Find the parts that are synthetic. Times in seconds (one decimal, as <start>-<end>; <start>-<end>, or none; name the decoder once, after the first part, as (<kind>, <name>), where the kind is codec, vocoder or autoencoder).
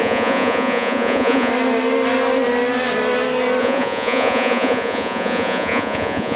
0.0-1.5 (vocoder, Vocos); 3.6-6.4